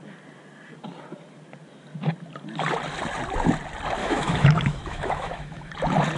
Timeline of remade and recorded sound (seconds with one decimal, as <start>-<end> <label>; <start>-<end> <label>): 0.0-4.0 recorded; 4.0-5.7 remade; 5.7-6.2 recorded